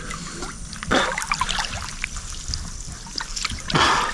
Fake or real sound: real